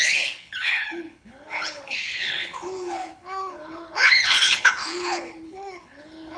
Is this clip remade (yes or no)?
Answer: yes